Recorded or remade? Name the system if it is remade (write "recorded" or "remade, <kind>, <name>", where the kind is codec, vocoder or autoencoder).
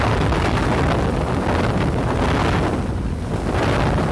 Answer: recorded